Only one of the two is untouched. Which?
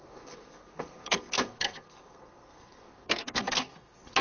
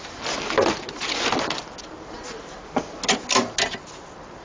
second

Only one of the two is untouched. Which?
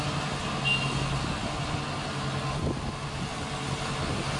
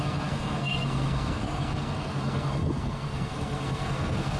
first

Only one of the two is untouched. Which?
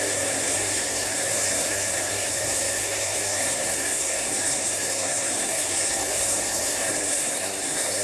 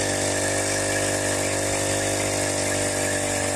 second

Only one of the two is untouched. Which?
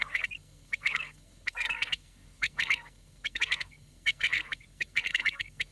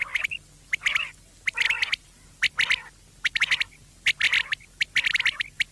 second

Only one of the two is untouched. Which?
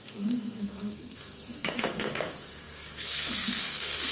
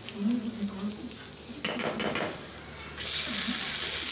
second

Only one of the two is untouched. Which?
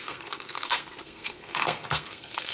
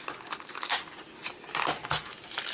second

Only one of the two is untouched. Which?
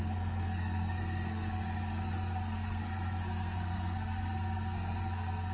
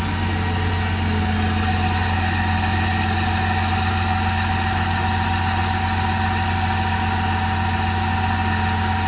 second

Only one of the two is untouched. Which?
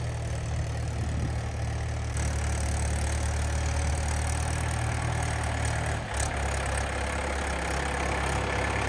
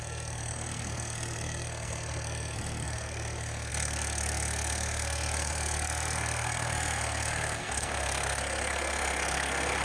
first